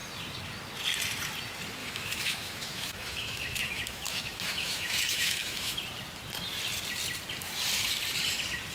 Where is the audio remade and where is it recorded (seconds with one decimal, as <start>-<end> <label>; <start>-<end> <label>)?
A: 0.0-1.8 recorded; 1.8-5.8 remade; 5.8-8.7 recorded

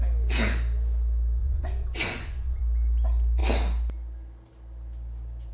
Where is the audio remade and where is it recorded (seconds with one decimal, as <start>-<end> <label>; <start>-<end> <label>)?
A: 0.0-1.4 recorded; 1.4-2.6 remade; 2.6-5.5 recorded

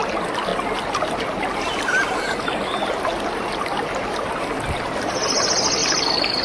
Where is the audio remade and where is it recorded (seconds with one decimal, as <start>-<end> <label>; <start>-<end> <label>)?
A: 0.0-6.4 recorded

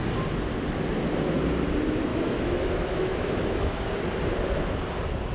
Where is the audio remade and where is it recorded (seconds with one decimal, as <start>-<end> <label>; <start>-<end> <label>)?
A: 0.0-2.1 recorded; 2.1-3.8 remade; 3.8-5.3 recorded

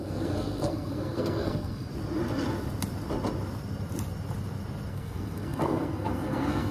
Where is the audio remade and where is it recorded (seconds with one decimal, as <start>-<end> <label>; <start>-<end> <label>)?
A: 0.0-1.9 remade; 1.9-4.9 recorded; 4.9-6.7 remade

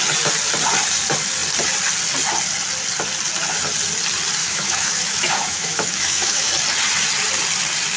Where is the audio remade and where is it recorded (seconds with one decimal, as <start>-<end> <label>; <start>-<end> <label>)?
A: 0.0-4.4 recorded; 4.4-6.5 remade; 6.5-8.0 recorded